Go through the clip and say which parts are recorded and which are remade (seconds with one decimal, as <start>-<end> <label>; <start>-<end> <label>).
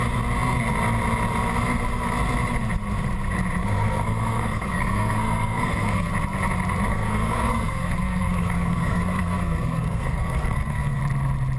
0.0-3.6 recorded; 3.6-6.1 remade; 6.1-6.9 recorded; 6.9-11.0 remade; 11.0-11.6 recorded